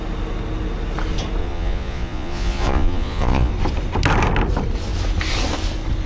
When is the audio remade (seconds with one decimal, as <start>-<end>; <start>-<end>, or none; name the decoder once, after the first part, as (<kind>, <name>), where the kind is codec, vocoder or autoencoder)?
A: 1.4-3.5 (vocoder, Vocos)